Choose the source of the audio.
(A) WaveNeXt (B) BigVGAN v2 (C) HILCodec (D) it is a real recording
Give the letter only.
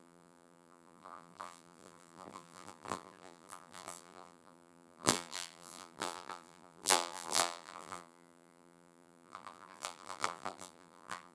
B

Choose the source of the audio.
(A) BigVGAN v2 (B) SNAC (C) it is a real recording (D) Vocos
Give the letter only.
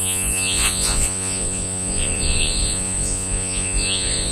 D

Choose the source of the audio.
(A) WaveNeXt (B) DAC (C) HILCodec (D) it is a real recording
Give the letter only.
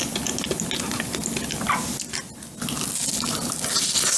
D